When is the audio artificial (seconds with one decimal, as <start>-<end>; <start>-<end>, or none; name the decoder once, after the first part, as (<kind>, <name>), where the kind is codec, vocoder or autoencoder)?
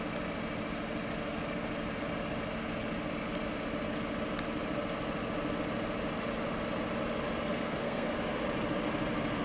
7.5-8.1 (codec, SNAC)